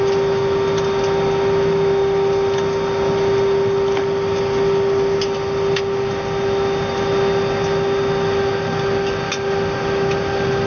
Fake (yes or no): no